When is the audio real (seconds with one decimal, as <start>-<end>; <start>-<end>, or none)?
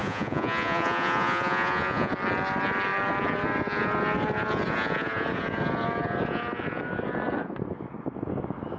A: 2.1-8.8